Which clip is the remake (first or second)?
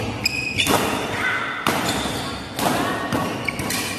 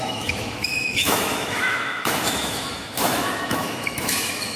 second